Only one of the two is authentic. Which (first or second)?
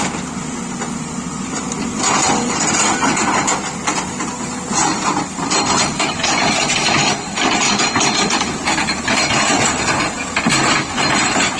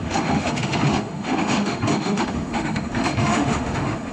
first